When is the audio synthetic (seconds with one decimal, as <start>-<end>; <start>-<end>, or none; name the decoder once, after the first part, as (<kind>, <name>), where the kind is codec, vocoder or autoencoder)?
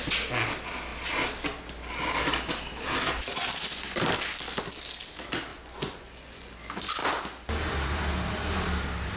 5.5-6.5 (vocoder, Vocos)